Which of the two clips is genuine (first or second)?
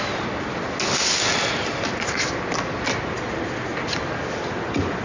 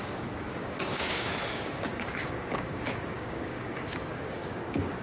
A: first